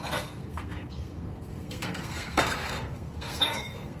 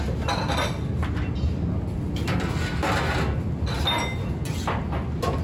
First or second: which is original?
second